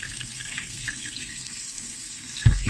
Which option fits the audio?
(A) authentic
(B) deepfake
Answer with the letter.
B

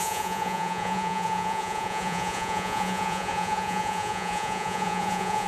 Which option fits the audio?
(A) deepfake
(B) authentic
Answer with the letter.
A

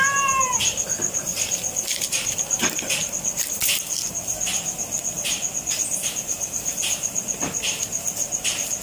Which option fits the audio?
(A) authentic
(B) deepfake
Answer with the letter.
A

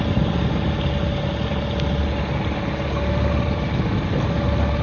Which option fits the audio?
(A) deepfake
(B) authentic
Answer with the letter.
B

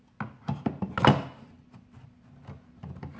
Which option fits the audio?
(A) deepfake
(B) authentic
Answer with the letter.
B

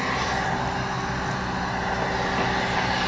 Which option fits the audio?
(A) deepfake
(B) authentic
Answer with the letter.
B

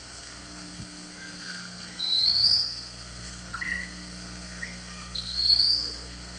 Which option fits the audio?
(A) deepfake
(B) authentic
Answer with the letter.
A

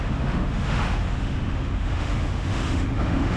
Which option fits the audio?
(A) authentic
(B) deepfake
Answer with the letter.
B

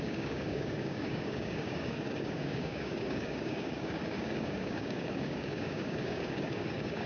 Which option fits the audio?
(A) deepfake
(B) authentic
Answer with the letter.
A